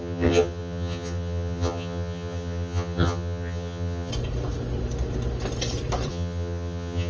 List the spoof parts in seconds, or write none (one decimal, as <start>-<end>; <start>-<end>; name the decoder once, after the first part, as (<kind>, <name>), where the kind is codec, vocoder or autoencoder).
0.0-4.1 (vocoder, HiFi-GAN); 6.1-7.1